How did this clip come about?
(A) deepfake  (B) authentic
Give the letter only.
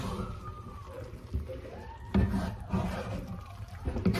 B